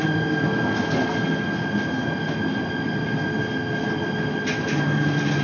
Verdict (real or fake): real